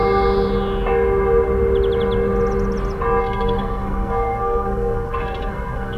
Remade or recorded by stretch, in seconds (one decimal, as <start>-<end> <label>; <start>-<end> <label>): 0.0-3.2 recorded; 3.2-6.0 remade